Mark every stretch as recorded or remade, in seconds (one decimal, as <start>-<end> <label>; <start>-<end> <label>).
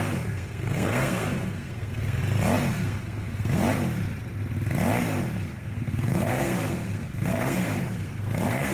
0.0-2.2 remade; 2.2-2.7 recorded; 2.7-3.6 remade; 3.6-5.5 recorded; 5.5-8.7 remade